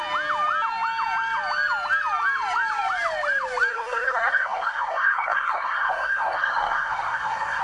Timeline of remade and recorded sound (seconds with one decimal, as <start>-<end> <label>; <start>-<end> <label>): 0.0-3.7 recorded; 3.7-7.6 remade